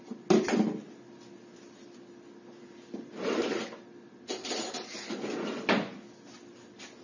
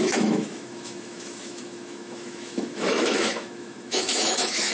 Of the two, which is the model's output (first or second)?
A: second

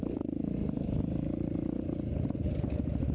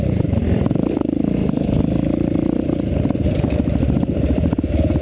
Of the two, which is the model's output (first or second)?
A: second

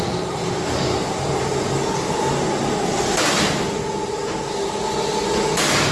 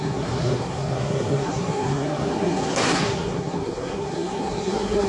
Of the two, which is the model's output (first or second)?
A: second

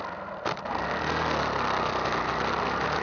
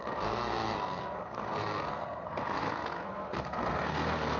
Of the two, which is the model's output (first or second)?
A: second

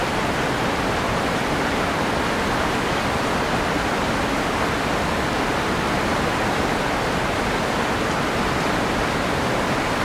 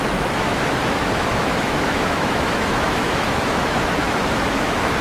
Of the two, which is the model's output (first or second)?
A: second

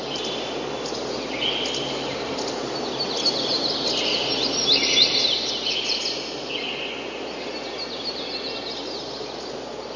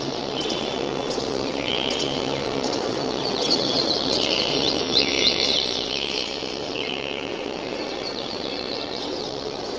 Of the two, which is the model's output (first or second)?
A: second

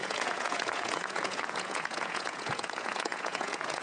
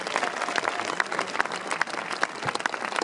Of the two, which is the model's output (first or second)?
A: first